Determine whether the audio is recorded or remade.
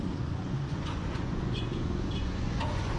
remade